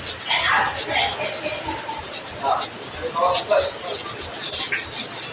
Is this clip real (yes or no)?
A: yes